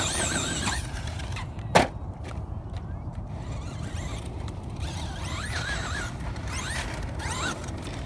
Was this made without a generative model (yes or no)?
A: no